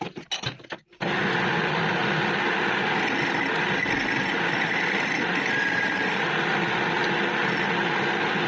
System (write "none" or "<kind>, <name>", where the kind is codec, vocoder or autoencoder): none